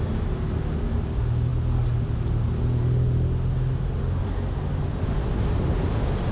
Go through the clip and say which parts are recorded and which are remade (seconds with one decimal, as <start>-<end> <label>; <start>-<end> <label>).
0.0-6.3 recorded